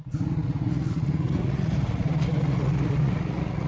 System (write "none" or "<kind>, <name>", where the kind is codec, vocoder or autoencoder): vocoder, Vocos